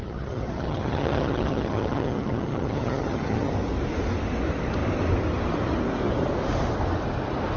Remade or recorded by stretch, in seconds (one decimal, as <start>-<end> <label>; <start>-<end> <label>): 0.0-3.5 remade; 3.5-7.6 recorded